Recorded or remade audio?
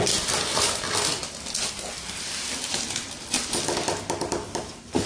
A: recorded